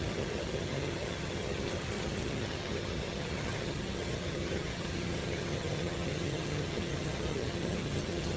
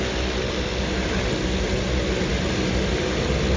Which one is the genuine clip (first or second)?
second